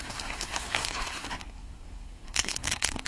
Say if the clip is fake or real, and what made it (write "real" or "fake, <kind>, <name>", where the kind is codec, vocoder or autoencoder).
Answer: fake, codec, SNAC